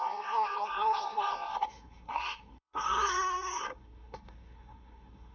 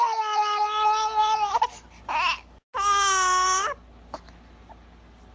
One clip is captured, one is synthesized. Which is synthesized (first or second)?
first